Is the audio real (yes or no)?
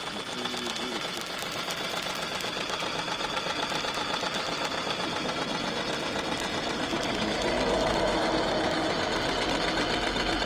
yes